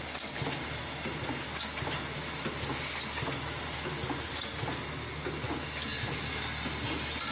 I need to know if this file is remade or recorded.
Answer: recorded